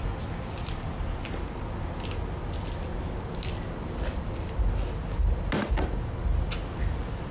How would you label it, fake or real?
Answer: real